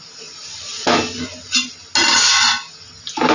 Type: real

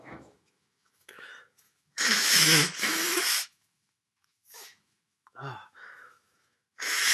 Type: fake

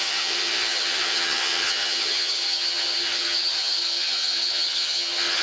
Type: fake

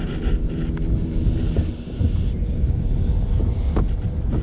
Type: real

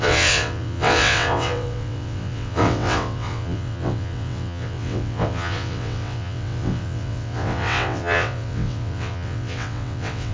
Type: fake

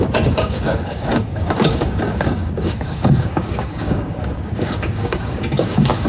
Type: fake